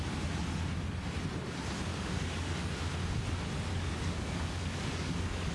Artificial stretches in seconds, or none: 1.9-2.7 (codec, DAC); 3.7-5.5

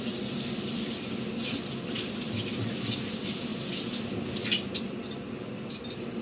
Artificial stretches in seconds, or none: none

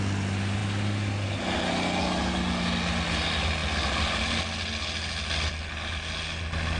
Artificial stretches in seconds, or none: none

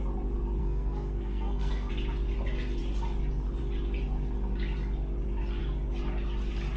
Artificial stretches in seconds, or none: 0.6-1.9 (codec, SNAC)

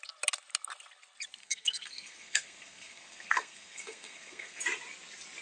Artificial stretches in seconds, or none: 1.4-4.6 (codec, SNAC)